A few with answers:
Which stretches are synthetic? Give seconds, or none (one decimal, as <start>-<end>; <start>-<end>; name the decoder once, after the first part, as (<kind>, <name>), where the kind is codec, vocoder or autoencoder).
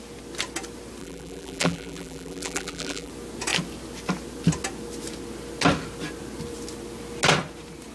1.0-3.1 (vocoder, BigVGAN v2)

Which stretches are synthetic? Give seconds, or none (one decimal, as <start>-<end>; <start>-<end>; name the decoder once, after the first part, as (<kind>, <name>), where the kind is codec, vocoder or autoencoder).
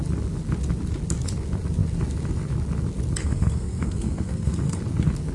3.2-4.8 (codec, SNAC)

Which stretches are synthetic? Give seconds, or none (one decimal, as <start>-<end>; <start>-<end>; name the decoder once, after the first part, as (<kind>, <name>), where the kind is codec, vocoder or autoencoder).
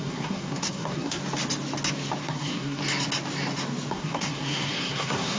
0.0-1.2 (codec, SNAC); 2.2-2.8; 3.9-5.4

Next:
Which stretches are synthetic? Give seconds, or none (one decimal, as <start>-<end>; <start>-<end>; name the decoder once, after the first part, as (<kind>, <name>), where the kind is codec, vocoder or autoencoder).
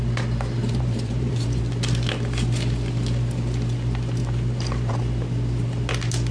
0.6-1.6 (vocoder, BigVGAN v2); 4.2-5.0